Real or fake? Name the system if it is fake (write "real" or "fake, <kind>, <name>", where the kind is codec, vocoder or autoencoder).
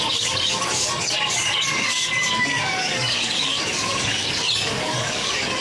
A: fake, codec, DAC